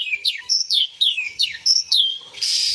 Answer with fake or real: fake